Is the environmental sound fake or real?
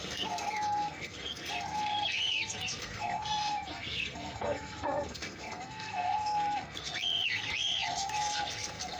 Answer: fake